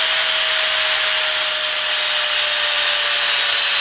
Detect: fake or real real